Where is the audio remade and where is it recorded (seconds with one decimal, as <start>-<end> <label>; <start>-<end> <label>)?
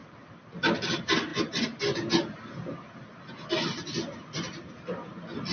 0.0-5.5 recorded